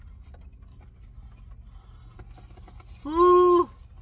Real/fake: real